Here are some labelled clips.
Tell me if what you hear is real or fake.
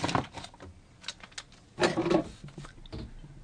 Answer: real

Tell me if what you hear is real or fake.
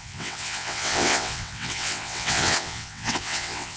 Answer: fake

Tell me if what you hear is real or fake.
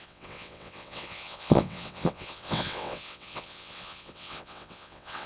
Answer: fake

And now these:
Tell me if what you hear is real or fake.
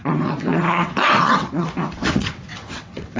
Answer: fake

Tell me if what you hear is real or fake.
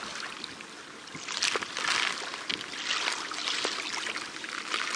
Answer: real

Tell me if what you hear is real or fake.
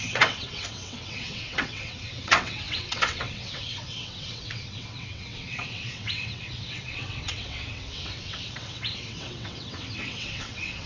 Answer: fake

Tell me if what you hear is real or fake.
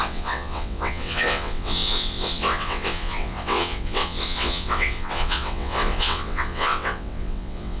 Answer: fake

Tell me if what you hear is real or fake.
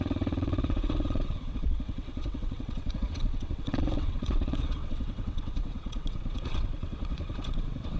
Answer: fake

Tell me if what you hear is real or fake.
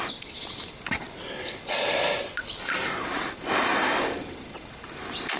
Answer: real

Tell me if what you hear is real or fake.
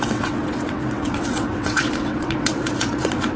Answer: fake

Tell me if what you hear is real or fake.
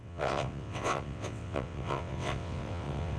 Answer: fake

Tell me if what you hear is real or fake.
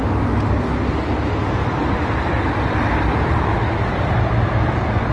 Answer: real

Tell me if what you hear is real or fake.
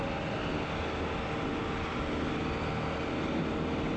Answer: real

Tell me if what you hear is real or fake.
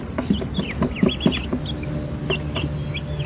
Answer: real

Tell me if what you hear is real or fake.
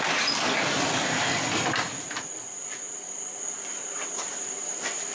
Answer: real